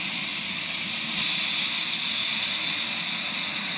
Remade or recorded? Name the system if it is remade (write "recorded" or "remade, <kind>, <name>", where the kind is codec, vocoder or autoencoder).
recorded